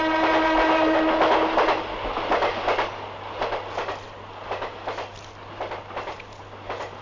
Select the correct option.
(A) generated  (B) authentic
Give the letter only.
B